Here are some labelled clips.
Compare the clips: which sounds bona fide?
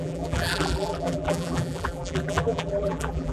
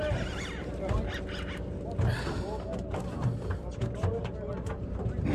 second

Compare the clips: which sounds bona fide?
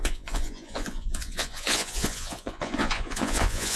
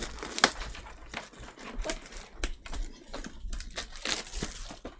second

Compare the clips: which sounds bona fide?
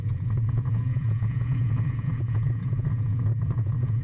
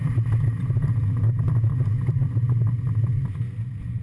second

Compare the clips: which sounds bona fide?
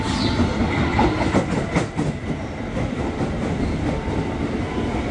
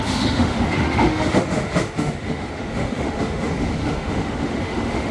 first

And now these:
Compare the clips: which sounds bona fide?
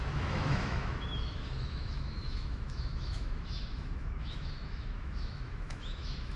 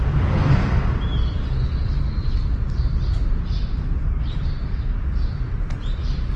second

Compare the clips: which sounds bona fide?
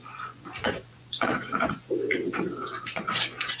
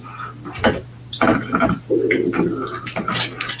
second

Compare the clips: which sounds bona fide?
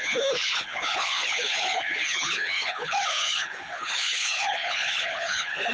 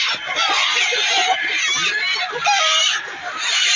second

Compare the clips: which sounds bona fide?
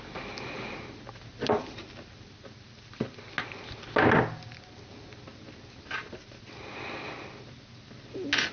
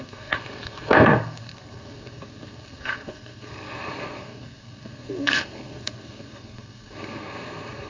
first